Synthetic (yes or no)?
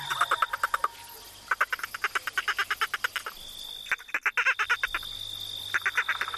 no